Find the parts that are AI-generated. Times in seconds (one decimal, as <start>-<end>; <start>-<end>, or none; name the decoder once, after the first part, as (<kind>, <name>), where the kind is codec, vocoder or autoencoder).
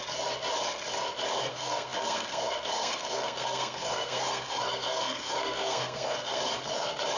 1.5-6.4 (codec, SNAC)